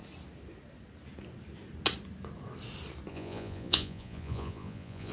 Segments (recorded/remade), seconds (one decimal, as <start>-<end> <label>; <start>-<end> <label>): 0.0-3.1 recorded; 3.1-5.1 remade